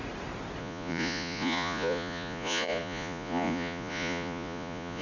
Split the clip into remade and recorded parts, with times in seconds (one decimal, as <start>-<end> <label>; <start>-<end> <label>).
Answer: 0.0-0.6 recorded; 0.6-5.0 remade